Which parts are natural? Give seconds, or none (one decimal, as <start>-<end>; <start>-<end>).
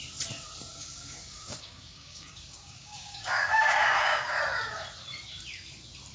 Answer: 0.0-0.7; 4.4-6.1